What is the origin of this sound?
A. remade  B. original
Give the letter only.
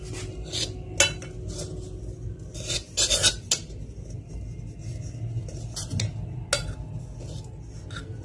B